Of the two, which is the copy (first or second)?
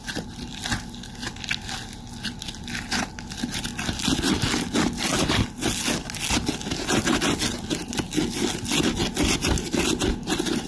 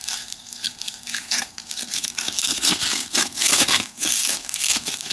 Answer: second